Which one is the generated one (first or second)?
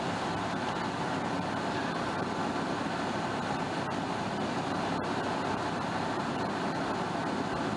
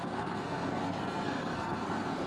second